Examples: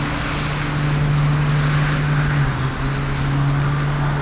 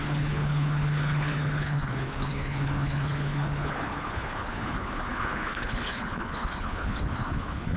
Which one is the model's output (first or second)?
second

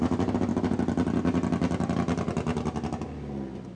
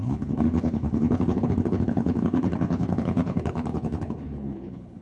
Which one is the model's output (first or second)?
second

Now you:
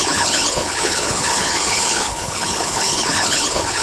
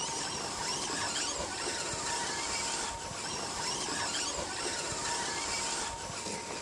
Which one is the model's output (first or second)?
first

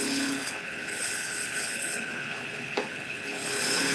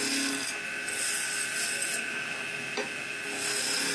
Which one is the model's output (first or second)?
first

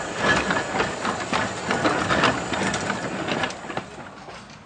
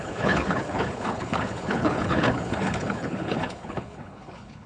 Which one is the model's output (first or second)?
second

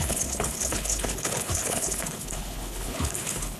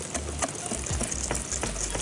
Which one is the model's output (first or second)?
first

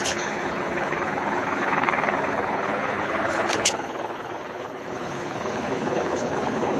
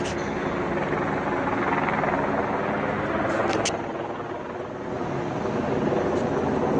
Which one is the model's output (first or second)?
first